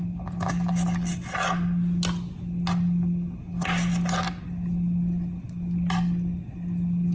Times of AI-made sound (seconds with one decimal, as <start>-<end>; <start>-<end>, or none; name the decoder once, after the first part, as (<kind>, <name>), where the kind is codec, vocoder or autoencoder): none